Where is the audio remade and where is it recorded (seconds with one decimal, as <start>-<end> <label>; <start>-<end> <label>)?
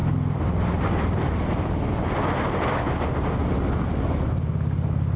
0.0-2.2 remade; 2.2-3.4 recorded; 3.4-3.9 remade; 3.9-5.2 recorded